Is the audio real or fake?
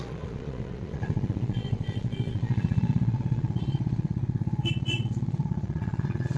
fake